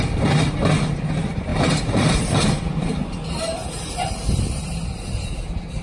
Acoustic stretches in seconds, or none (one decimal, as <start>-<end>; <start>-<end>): 0.0-1.5; 2.4-3.6; 4.1-5.8